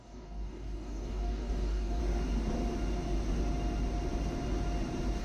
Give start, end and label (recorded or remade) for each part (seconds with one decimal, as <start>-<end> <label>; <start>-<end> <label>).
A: 0.0-2.0 remade; 2.0-5.2 recorded